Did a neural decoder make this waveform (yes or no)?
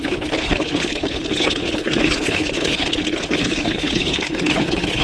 yes